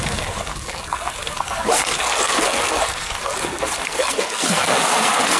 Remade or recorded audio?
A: remade